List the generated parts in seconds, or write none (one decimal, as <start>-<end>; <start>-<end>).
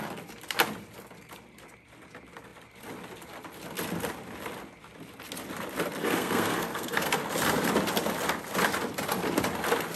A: 6.0-7.2